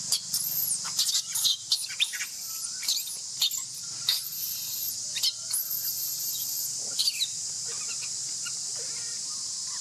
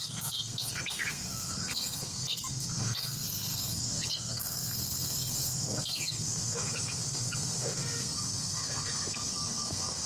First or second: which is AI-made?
second